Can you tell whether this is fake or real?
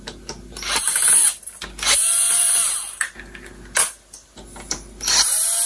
real